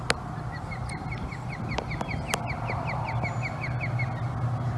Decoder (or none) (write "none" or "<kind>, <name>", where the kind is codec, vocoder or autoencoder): none